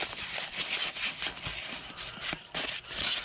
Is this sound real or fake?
real